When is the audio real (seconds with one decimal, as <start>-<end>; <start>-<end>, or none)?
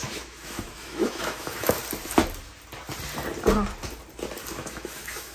1.8-4.5